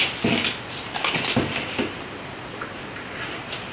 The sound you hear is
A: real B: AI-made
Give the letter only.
A